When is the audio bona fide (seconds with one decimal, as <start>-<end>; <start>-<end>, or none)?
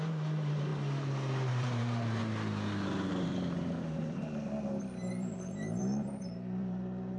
0.7-1.5; 2.2-3.1; 4.2-5.1